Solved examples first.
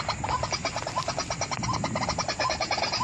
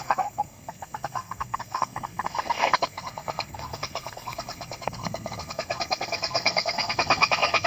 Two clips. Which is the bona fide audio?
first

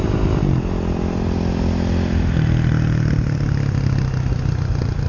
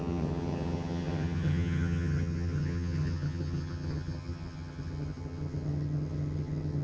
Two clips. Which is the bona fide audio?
first